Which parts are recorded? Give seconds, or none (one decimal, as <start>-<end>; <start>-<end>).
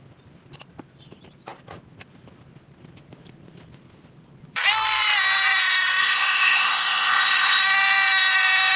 0.0-6.0; 7.6-8.8